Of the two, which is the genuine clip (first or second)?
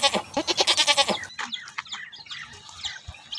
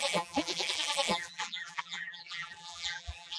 first